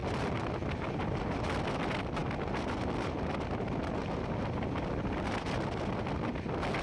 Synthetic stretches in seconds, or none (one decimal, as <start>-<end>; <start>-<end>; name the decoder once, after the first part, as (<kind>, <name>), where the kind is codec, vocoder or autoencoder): none